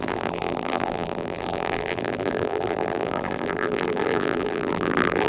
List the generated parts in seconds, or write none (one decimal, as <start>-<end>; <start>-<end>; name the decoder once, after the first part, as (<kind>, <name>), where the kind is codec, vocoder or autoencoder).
0.0-5.3 (vocoder, BigVGAN v2)